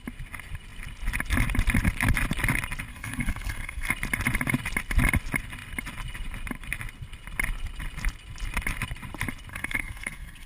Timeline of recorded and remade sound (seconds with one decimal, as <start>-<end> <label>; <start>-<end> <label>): 0.0-2.9 recorded; 2.9-3.9 remade; 3.9-9.5 recorded; 9.5-10.5 remade